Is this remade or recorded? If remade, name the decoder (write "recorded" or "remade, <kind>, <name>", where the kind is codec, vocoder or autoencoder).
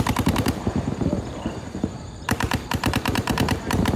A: remade, vocoder, BigVGAN v2